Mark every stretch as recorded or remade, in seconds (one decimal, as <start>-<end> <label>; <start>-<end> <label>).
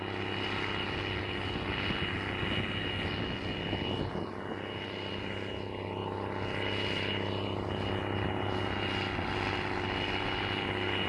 0.0-11.1 recorded